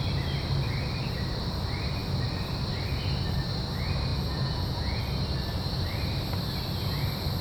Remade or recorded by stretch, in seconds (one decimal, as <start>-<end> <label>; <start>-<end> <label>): 0.0-4.1 recorded; 4.1-5.0 remade; 5.0-7.4 recorded